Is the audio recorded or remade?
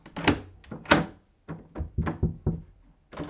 recorded